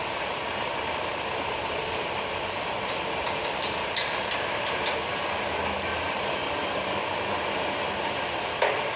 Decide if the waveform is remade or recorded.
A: recorded